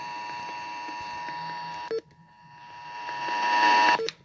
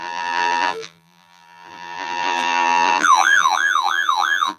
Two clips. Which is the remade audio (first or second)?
second